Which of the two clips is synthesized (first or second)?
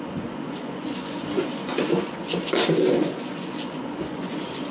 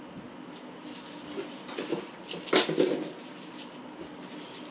first